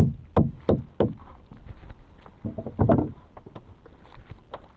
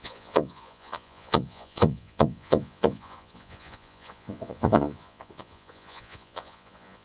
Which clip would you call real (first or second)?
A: first